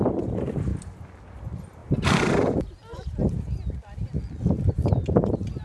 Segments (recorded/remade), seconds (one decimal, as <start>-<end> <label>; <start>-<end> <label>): 0.0-5.6 recorded